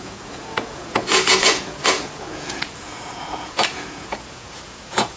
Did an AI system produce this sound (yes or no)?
yes